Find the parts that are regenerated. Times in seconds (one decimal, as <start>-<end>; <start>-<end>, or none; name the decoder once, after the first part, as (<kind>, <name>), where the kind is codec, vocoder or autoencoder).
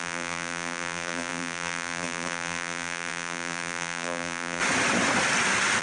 0.0-4.6 (vocoder, BigVGAN v2)